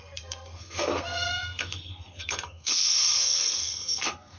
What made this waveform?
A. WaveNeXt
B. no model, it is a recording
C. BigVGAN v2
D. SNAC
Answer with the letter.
D